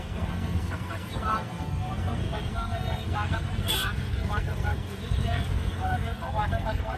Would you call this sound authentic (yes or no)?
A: no